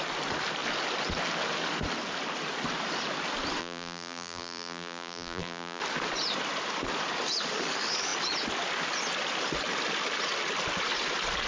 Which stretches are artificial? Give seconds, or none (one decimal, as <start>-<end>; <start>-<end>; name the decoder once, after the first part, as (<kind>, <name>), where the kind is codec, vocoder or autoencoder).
3.6-5.8 (vocoder, BigVGAN v2)